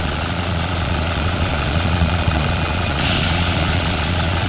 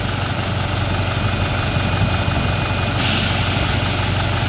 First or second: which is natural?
second